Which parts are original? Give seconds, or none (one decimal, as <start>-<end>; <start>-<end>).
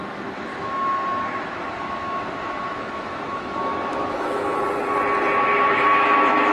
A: 4.6-5.4